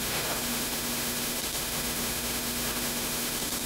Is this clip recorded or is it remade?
remade